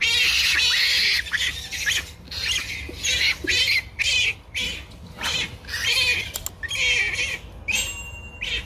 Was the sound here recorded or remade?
recorded